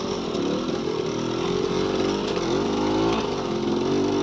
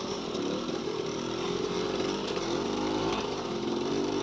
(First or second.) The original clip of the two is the first